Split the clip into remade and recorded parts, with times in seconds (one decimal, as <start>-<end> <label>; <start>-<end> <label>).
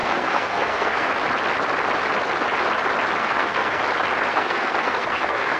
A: 0.0-1.1 remade; 1.1-3.2 recorded; 3.2-3.8 remade; 3.8-4.3 recorded; 4.3-5.6 remade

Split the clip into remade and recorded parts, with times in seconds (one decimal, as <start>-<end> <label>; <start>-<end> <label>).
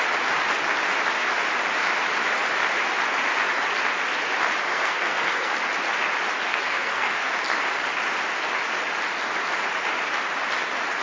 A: 0.0-4.7 recorded; 4.7-5.5 remade; 5.5-6.5 recorded; 6.5-7.3 remade; 7.3-11.0 recorded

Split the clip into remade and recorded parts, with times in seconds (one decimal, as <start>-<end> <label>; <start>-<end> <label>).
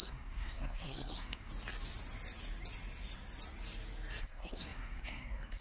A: 0.0-1.5 remade; 1.5-4.2 recorded; 4.2-5.6 remade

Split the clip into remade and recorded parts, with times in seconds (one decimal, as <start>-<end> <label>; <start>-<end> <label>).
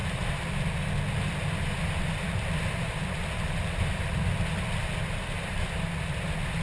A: 0.0-6.6 recorded